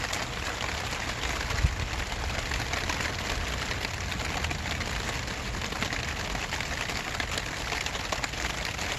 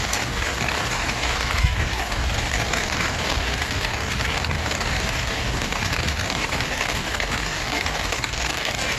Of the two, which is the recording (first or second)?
first